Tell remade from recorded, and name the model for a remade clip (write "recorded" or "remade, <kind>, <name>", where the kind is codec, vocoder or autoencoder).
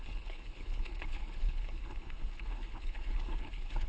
remade, codec, HILCodec